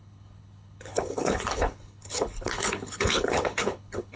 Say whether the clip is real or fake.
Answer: fake